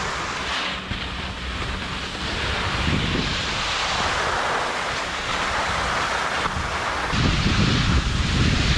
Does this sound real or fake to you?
real